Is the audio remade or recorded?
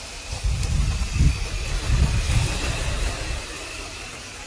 remade